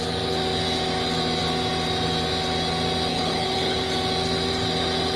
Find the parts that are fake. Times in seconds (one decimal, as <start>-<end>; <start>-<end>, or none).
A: 3.1-3.8